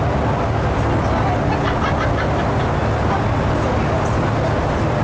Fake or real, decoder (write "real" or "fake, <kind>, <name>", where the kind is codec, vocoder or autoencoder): real